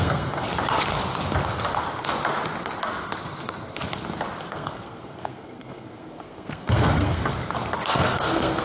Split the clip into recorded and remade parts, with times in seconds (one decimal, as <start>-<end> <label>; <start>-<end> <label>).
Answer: 0.0-0.5 remade; 0.5-4.5 recorded; 4.5-7.2 remade; 7.2-7.9 recorded; 7.9-8.6 remade